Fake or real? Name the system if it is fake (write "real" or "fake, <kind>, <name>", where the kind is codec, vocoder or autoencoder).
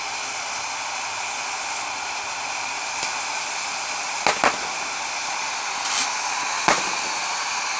real